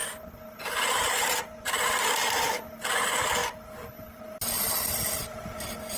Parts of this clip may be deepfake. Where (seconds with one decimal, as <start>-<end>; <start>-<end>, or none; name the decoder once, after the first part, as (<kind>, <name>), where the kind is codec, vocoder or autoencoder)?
none